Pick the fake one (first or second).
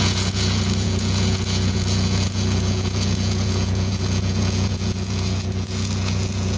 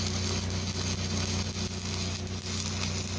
first